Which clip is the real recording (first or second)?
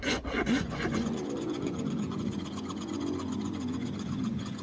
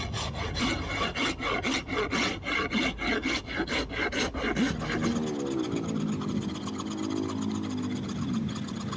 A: second